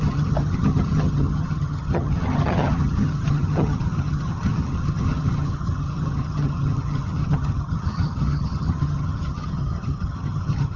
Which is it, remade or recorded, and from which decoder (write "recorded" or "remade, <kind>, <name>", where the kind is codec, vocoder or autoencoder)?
remade, vocoder, HiFi-GAN